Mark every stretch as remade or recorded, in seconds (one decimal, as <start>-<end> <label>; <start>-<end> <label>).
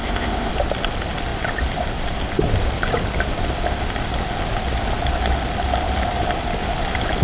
0.0-0.5 remade; 0.5-7.2 recorded